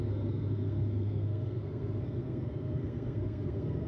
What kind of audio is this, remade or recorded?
remade